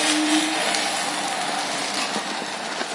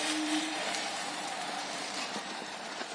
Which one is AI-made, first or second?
second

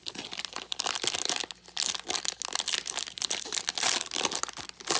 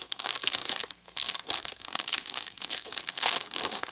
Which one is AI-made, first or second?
second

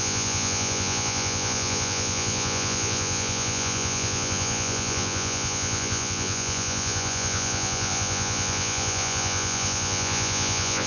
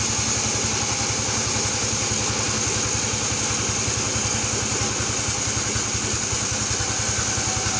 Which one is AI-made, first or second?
first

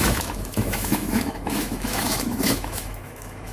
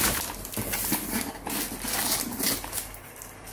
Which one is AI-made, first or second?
first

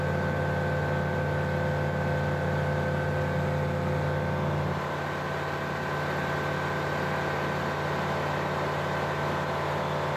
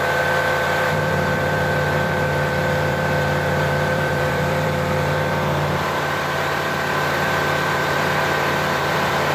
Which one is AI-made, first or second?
second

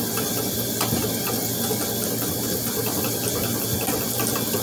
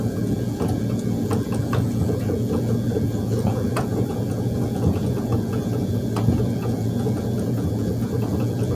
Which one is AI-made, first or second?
second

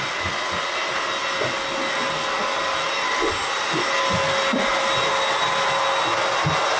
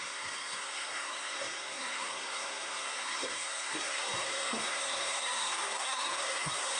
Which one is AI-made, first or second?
second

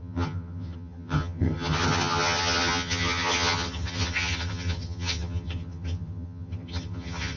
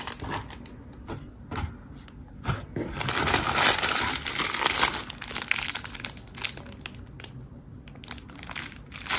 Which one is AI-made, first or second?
first